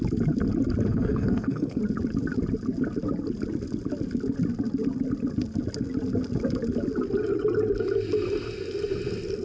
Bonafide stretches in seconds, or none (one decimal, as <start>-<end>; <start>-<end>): 0.0-0.9; 1.8-9.4